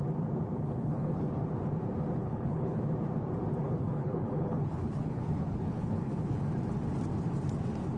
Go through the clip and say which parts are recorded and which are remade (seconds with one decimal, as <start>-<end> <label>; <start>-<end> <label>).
0.0-0.5 recorded; 0.5-1.3 remade; 1.3-2.2 recorded; 2.2-2.8 remade; 2.8-3.6 recorded; 3.6-6.4 remade; 6.4-8.0 recorded